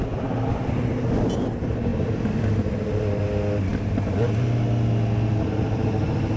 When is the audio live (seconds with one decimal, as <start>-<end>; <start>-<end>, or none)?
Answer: 0.0-6.4